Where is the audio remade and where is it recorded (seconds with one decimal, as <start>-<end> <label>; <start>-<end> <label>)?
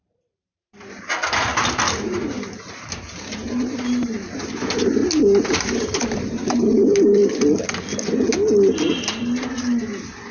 0.0-5.0 remade; 5.0-5.5 recorded; 5.5-7.2 remade; 7.2-9.5 recorded; 9.5-10.3 remade